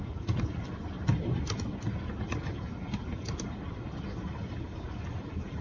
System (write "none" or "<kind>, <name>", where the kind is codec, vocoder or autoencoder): none